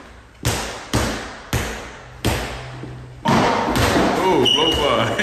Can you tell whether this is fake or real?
real